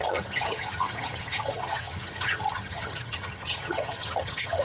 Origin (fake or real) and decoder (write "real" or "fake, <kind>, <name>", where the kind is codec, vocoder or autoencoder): fake, vocoder, HiFi-GAN